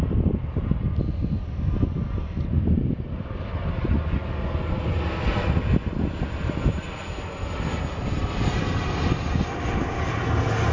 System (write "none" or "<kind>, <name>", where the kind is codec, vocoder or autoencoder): none